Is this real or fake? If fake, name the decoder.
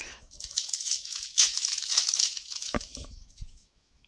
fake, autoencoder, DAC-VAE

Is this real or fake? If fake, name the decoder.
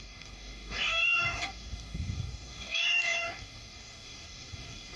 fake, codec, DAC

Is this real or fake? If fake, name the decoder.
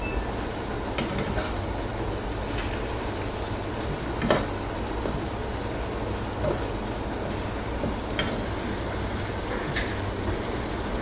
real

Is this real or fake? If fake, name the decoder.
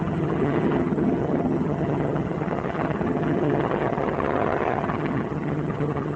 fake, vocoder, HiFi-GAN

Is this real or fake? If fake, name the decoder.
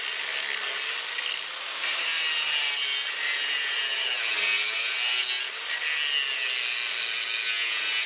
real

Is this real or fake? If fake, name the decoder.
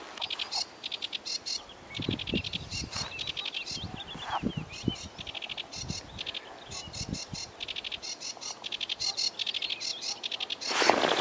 real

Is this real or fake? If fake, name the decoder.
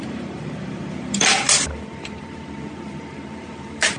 fake, vocoder, BigVGAN v2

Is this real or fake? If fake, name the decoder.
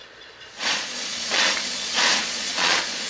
fake, vocoder, Vocos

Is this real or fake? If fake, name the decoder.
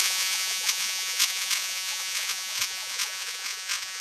fake, vocoder, Vocos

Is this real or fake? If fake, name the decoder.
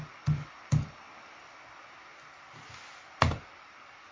real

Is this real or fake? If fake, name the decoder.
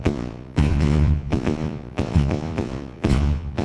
fake, vocoder, Vocos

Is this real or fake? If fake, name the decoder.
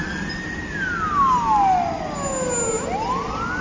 real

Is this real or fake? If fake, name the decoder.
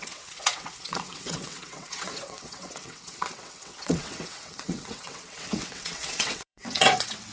fake, vocoder, WaveNeXt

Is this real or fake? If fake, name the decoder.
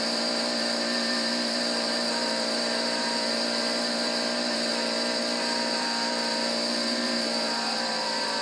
fake, vocoder, BigVGAN v2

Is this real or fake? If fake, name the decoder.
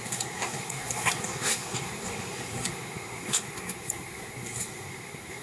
fake, codec, SNAC